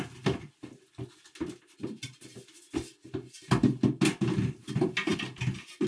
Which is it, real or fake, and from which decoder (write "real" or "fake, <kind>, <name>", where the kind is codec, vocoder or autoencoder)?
real